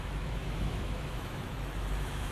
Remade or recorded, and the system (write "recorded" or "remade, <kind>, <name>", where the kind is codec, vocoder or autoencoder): remade, autoencoder, DAC-VAE